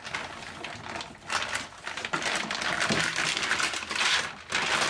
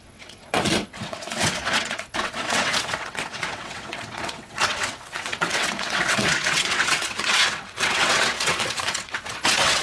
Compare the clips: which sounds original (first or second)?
first